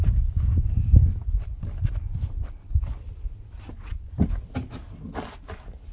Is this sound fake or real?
real